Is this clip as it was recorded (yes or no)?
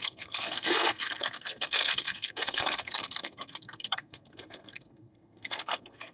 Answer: no